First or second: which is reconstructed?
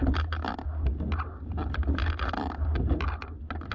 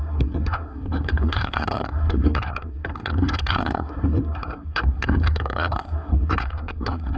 second